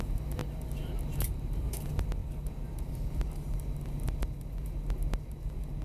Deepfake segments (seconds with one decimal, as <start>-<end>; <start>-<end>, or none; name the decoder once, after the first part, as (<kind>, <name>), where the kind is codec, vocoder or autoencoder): none